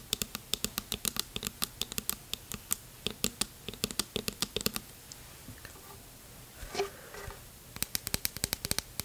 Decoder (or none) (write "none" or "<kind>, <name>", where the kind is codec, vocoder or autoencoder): none